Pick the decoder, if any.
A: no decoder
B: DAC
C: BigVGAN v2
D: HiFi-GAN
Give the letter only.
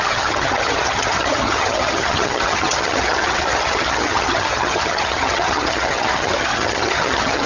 D